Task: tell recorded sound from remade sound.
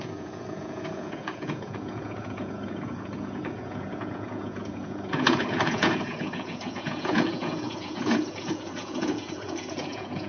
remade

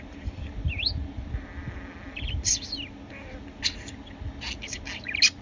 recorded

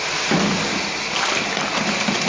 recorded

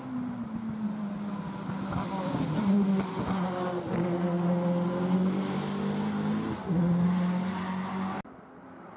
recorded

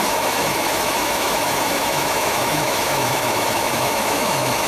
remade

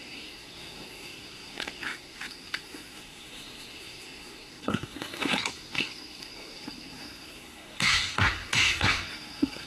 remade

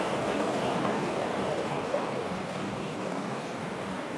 remade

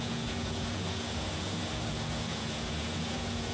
remade